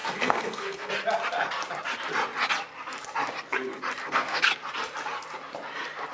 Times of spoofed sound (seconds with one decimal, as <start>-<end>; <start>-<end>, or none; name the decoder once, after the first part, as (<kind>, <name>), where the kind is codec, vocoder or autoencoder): 0.0-0.9 (codec, SNAC); 4.0-4.5